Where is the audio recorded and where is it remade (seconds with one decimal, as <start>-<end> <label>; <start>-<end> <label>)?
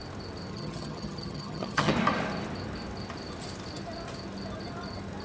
0.0-0.5 recorded; 0.5-1.9 remade; 1.9-5.2 recorded